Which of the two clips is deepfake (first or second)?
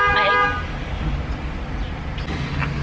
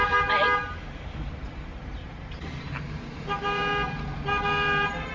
second